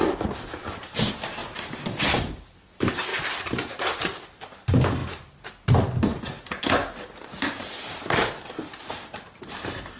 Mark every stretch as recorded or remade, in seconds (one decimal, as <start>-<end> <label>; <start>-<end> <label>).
0.0-1.4 recorded; 1.4-2.0 remade; 2.0-3.1 recorded; 3.1-4.0 remade; 4.0-6.8 recorded; 6.8-10.0 remade